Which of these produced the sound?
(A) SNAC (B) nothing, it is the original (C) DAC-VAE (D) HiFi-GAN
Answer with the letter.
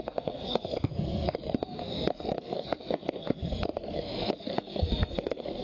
A